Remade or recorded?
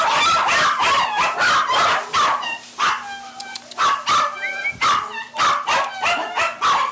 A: recorded